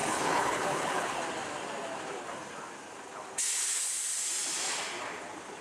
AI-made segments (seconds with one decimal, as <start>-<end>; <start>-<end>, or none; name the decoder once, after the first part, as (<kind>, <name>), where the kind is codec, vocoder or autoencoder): 0.0-1.2 (codec, HILCodec)